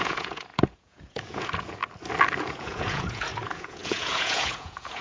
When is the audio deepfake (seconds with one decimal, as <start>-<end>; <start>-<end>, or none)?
0.0-1.8; 2.4-5.0